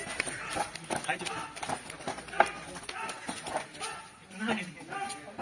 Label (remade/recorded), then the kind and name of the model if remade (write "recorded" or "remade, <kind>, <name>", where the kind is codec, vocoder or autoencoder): recorded